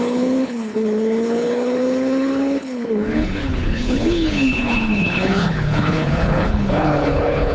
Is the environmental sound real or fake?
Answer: fake